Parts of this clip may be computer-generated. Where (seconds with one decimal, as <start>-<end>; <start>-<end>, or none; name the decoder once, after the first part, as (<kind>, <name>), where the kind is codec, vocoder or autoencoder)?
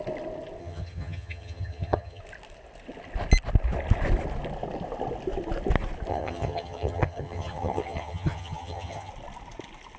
0.6-2.2 (vocoder, HiFi-GAN); 6.1-9.1